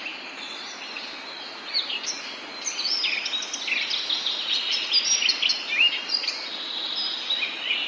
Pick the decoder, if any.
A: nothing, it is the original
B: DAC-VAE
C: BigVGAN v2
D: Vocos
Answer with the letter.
A